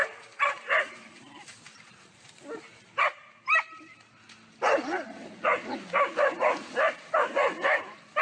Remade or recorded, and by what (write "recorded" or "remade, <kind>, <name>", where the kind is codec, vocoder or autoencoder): recorded